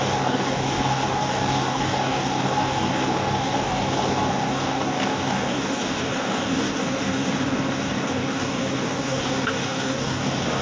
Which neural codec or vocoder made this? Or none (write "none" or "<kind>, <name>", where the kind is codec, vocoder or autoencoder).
codec, DAC